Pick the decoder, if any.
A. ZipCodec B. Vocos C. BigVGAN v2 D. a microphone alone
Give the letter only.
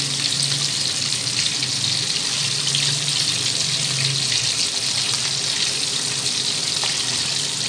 D